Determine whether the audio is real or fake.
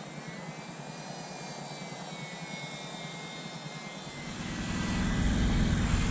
real